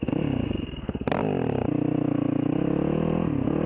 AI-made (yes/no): no